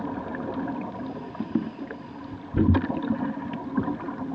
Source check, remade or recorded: recorded